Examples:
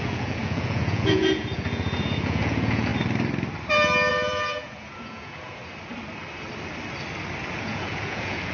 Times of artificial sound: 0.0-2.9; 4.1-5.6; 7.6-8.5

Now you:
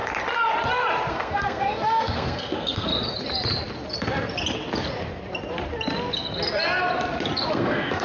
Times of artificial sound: 1.1-2.9; 7.5-8.0

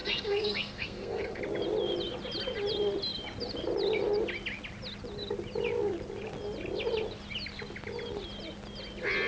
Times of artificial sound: 0.0-1.4

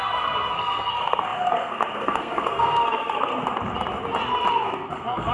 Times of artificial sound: 0.0-3.3; 4.5-5.3

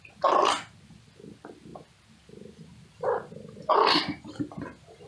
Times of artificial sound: none

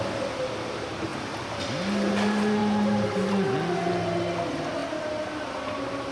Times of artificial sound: none